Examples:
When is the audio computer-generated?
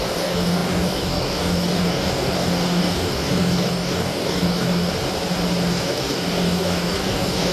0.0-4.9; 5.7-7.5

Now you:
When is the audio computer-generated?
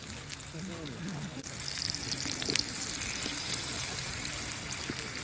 none